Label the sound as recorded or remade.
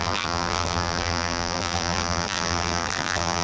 remade